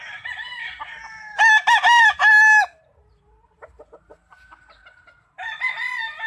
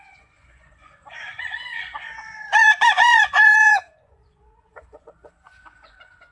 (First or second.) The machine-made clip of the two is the second